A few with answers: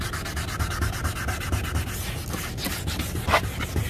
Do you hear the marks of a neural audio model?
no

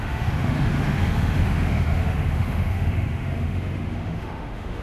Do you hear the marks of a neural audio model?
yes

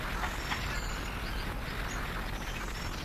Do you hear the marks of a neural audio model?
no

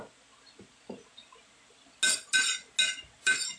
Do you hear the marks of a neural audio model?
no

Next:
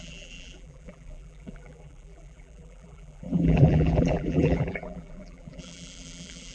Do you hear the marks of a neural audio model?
yes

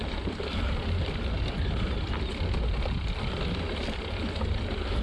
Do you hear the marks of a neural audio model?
no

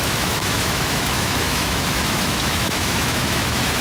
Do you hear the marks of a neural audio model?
yes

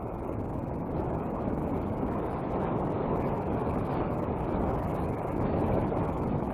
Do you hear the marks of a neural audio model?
yes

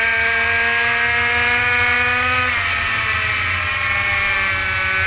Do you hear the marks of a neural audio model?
no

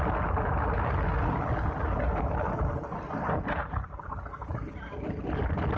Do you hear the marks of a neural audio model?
no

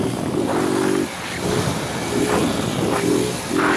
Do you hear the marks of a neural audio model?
no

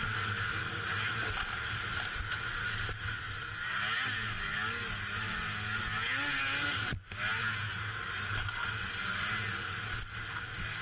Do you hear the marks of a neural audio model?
no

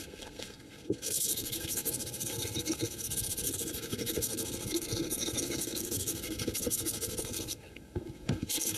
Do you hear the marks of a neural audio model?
yes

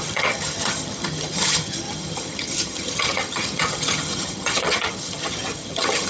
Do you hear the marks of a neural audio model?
yes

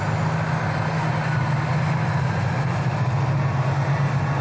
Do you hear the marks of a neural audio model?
no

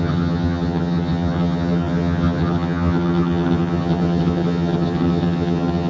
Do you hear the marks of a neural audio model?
yes